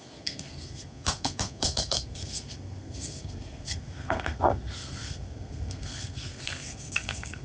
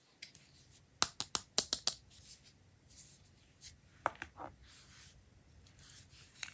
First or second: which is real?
second